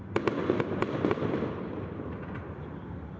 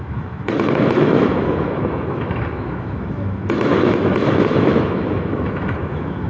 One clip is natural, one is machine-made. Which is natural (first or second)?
first